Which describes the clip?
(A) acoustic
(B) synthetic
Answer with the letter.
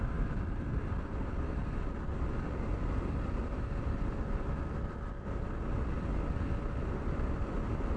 A